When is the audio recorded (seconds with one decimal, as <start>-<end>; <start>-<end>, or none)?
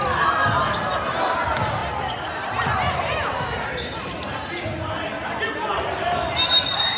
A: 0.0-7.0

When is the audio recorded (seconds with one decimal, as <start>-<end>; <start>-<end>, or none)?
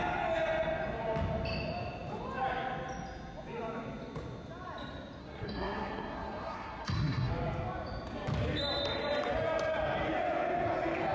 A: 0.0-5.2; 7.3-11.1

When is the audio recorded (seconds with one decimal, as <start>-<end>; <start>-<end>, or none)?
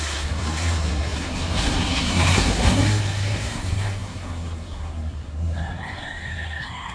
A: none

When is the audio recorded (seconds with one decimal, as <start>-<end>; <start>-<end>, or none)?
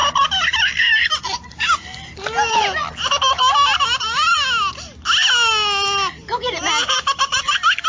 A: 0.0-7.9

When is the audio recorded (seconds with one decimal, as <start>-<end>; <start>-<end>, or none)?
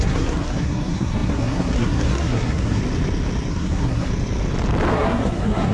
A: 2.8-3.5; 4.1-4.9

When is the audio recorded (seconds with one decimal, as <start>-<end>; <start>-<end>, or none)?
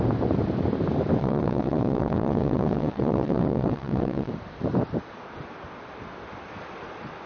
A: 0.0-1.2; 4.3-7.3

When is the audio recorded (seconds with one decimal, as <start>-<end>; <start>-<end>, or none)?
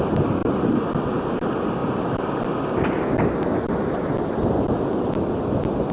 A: 0.0-5.9